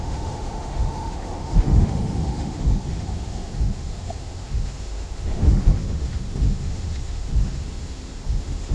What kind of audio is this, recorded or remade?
remade